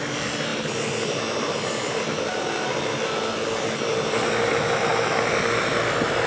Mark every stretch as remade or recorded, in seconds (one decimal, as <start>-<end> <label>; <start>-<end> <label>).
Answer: 0.0-6.3 recorded